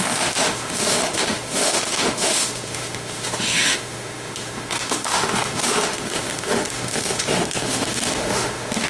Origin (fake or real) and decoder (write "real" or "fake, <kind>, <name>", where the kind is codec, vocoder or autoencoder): fake, autoencoder, DAC-VAE